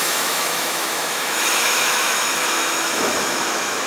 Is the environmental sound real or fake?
fake